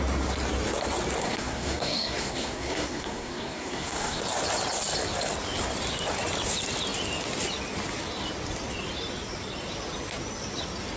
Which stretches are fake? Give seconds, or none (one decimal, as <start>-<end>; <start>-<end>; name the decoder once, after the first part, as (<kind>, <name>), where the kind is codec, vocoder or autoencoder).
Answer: 1.2-4.2 (codec, SNAC)

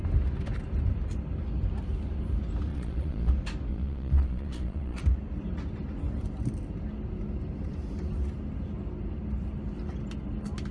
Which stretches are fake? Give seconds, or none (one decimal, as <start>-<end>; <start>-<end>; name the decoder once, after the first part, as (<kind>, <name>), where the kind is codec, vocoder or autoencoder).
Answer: 2.7-3.3 (vocoder, Vocos); 3.7-5.0

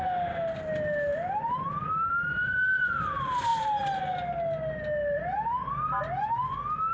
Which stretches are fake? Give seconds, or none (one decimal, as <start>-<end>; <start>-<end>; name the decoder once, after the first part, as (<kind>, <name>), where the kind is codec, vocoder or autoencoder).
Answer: none

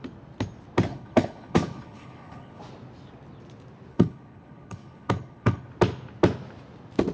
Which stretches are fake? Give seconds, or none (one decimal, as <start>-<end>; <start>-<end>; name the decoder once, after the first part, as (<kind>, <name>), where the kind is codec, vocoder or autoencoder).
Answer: 0.9-2.6 (codec, HILCodec); 3.9-5.7

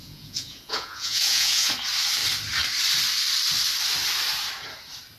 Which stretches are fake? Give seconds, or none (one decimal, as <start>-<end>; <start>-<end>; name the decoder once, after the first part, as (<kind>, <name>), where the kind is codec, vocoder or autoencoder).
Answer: 0.0-1.7 (vocoder, Vocos)